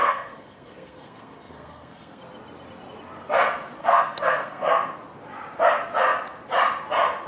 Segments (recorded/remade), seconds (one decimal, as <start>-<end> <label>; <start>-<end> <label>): 0.0-2.2 remade; 2.2-3.8 recorded; 3.8-5.0 remade; 5.0-7.3 recorded